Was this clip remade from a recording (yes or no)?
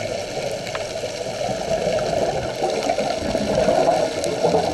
no